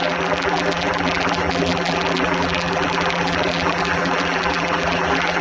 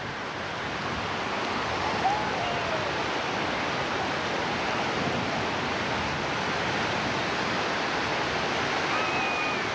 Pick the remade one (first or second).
first